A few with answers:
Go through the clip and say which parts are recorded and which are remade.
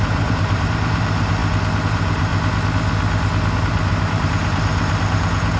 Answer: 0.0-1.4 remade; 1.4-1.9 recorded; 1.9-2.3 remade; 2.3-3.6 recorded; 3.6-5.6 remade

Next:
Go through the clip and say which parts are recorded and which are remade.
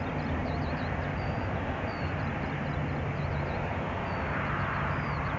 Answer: 0.0-0.4 recorded; 0.4-2.8 remade; 2.8-5.4 recorded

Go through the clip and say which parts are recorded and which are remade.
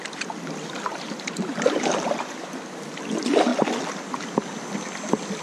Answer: 0.0-0.9 recorded; 0.9-2.6 remade; 2.6-5.4 recorded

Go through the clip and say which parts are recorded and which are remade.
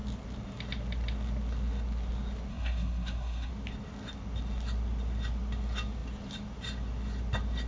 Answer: 0.0-2.5 recorded; 2.5-3.5 remade; 3.5-7.7 recorded